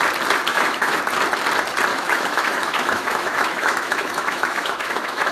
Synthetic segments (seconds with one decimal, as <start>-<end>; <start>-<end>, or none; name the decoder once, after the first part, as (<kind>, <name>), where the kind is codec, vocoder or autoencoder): 0.5-1.0 (autoencoder, DAC-VAE); 1.9-5.3